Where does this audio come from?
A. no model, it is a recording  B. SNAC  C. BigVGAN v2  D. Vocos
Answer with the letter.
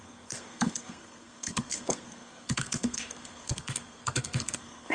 B